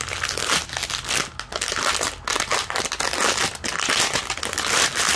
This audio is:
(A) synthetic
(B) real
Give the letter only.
B